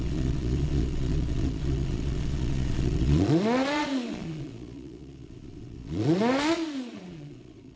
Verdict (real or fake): fake